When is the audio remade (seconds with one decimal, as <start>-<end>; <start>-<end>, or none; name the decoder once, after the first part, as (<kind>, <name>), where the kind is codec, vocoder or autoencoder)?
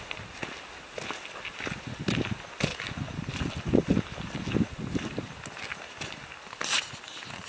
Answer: none